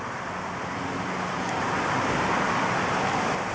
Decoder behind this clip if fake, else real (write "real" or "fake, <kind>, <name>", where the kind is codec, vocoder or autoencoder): real